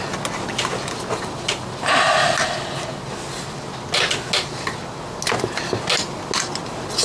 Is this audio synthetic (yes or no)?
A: no